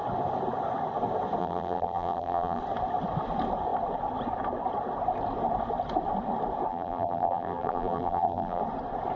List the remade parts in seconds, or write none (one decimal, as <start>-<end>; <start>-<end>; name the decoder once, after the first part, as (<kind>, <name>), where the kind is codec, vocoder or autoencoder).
1.4-2.6 (vocoder, BigVGAN v2); 6.7-8.6